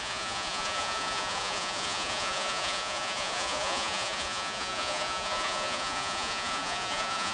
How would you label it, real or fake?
fake